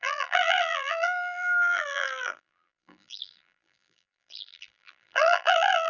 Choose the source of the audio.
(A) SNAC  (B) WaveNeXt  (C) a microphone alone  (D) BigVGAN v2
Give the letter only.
D